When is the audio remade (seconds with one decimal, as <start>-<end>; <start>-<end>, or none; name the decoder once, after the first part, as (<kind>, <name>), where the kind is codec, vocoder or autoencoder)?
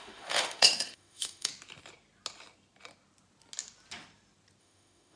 0.0-1.5 (autoencoder, DAC-VAE); 4.6-5.2